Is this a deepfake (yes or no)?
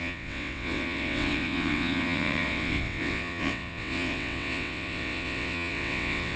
yes